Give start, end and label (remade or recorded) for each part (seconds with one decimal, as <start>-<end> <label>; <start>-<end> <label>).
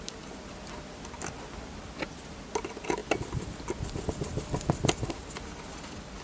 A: 0.0-6.2 recorded